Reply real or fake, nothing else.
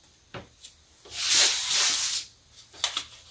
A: real